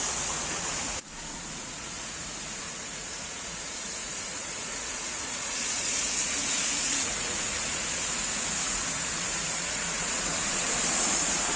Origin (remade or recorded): remade